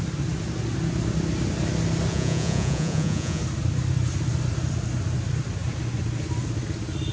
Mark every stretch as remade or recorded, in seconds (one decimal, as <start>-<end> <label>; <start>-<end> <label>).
0.0-2.1 recorded; 2.1-3.4 remade; 3.4-7.1 recorded